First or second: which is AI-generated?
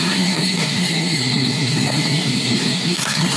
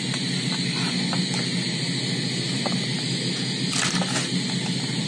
first